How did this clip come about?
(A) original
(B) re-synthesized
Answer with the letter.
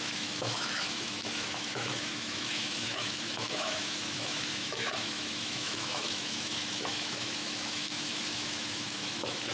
B